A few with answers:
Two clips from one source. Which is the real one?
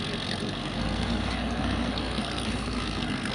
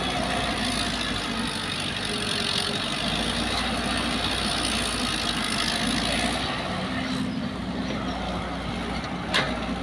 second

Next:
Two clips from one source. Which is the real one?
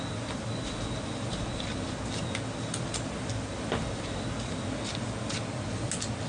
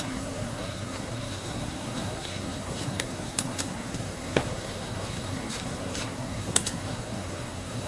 first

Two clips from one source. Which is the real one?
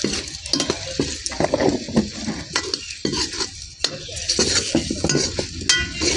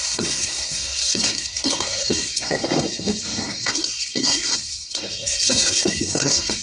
first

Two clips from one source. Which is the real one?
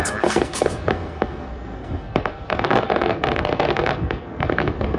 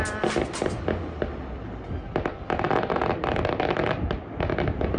second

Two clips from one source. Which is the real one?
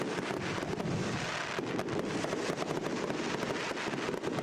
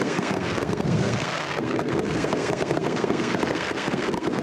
first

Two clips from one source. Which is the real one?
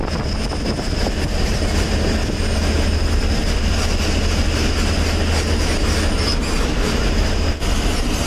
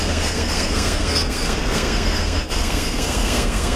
first